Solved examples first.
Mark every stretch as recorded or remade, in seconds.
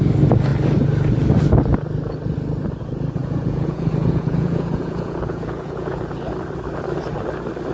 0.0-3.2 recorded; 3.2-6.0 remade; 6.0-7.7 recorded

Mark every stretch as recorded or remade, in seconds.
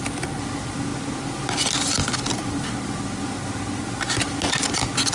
0.0-5.1 recorded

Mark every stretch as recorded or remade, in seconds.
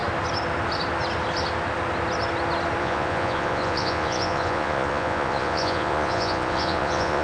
0.0-2.8 recorded; 2.8-7.2 remade